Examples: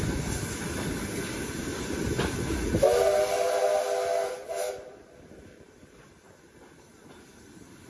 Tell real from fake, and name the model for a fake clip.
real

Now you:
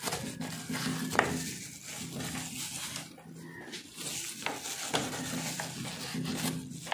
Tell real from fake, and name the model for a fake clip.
real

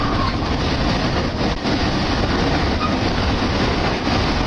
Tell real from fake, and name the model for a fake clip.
real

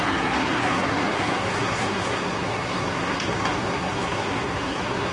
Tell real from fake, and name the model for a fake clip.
fake, codec, SNAC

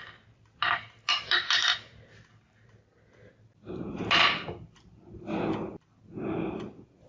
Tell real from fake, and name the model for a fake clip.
real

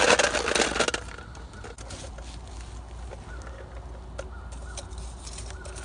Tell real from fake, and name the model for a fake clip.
real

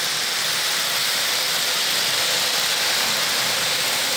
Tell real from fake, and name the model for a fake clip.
real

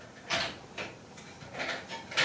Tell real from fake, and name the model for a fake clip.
real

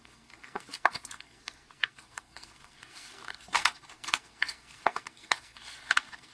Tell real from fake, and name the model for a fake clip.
fake, codec, SNAC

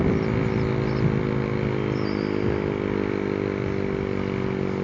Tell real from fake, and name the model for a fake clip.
real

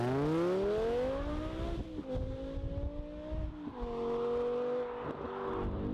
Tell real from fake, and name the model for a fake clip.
real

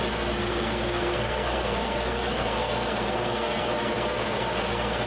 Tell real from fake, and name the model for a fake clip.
fake, codec, SNAC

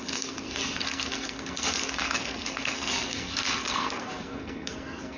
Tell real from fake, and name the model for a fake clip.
fake, codec, SNAC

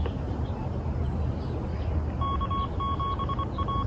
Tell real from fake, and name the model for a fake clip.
real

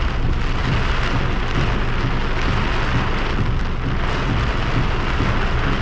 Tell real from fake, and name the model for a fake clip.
real